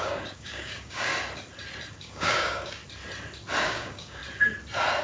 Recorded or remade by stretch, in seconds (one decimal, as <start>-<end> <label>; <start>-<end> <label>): 0.0-1.1 remade; 1.1-1.9 recorded; 1.9-2.8 remade; 2.8-3.6 recorded; 3.6-4.2 remade; 4.2-5.0 recorded